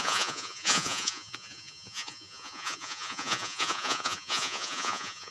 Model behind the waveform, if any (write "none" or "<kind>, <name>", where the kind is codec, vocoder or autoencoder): vocoder, Vocos